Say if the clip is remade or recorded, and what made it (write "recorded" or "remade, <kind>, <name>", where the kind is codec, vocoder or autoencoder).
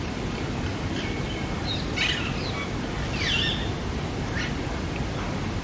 recorded